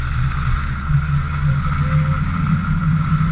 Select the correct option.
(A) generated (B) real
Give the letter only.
B